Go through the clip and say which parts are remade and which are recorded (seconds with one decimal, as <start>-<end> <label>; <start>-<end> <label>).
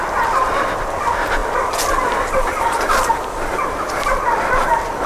0.0-5.1 recorded